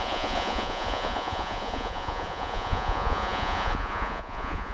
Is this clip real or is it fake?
fake